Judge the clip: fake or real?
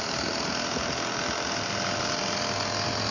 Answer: real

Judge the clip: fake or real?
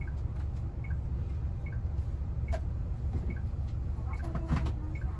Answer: real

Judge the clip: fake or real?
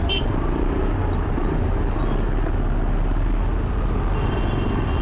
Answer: real